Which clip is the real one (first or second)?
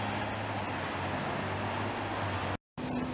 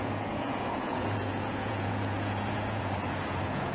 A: first